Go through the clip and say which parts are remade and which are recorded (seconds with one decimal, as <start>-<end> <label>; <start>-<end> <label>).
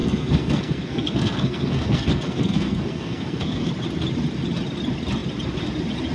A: 0.0-3.7 remade; 3.7-6.1 recorded